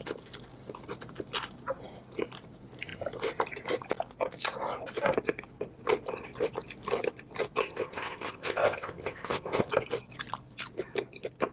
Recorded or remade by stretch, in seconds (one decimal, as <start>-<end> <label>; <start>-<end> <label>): 0.0-7.6 recorded; 7.6-9.7 remade; 9.7-11.5 recorded